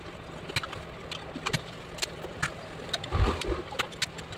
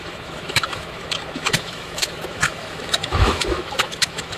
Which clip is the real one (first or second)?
first